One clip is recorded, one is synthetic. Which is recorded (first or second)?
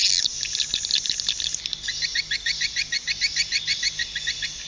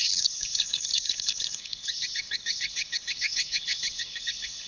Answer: first